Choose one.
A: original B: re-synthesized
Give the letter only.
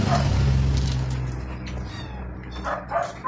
A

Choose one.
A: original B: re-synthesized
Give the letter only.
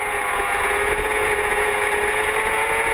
B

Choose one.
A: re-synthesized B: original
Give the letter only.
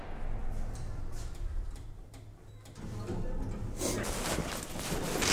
B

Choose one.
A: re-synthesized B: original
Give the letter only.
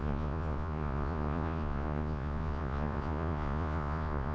A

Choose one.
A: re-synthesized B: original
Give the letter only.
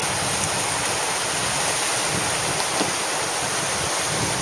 B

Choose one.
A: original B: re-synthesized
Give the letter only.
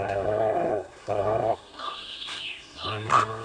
B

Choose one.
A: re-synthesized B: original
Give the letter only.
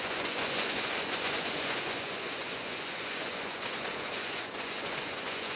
A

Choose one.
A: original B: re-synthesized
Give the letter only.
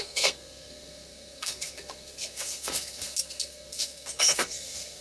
B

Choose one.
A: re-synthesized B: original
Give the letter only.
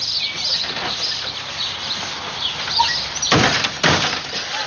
B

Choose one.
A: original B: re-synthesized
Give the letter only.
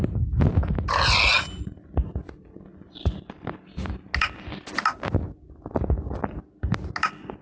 A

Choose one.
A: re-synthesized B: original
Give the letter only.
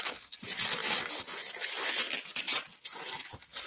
B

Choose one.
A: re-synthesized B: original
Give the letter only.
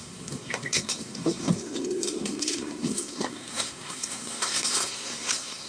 A